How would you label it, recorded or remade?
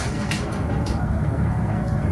remade